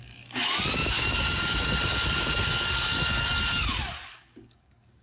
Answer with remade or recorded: remade